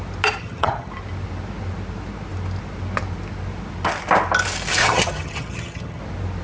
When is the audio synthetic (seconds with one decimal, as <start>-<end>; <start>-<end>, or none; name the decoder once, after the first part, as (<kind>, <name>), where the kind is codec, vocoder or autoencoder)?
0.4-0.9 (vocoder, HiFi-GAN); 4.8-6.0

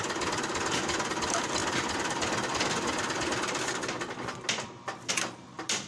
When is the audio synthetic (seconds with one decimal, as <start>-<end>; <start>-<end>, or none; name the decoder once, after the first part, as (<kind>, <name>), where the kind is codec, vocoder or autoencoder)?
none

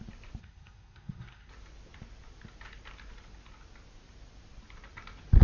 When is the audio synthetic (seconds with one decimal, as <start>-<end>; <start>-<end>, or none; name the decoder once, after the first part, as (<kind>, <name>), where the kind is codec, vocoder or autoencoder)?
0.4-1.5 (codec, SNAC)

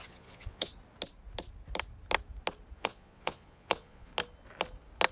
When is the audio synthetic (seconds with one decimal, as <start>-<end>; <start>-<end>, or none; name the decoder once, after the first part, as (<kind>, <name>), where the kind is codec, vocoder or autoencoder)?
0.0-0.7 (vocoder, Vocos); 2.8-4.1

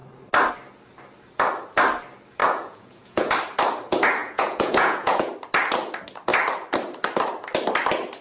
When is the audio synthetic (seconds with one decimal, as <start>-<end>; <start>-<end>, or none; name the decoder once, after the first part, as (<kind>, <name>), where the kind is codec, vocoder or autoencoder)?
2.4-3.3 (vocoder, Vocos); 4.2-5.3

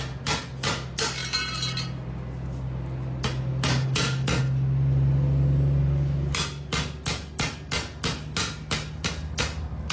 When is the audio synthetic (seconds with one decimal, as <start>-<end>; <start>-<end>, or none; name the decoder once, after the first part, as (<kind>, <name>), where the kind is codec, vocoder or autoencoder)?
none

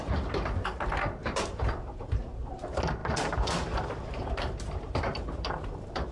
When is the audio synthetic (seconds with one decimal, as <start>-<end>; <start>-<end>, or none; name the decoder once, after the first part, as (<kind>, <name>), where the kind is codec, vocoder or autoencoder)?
0.0-6.1 (vocoder, BigVGAN v2)

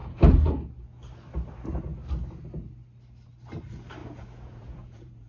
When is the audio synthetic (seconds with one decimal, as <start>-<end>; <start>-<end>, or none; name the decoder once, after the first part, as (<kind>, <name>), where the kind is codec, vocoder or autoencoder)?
0.0-0.5 (vocoder, Vocos); 4.0-5.3